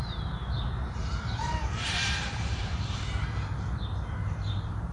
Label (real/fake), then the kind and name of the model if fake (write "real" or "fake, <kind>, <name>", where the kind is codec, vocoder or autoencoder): fake, vocoder, BigVGAN v2